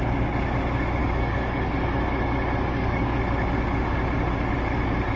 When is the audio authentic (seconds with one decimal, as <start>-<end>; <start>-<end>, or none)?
0.0-1.0; 1.7-2.7; 3.2-5.2